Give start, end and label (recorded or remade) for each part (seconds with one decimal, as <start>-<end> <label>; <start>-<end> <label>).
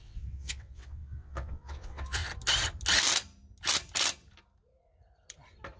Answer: 0.0-2.3 remade; 2.3-5.8 recorded